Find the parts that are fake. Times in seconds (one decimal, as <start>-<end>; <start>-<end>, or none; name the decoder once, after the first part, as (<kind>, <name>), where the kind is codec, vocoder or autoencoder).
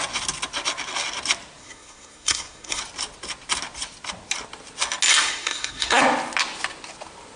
1.6-2.8 (codec, SNAC); 5.1-6.0